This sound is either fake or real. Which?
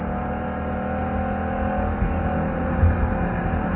real